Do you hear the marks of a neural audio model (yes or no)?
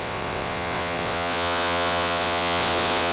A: yes